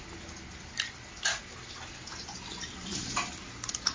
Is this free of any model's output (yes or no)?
yes